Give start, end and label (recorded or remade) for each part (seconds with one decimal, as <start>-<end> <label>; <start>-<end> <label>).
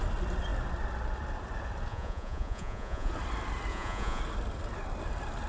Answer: 0.0-1.9 recorded; 1.9-3.1 remade; 3.1-3.7 recorded; 3.7-4.2 remade; 4.2-5.5 recorded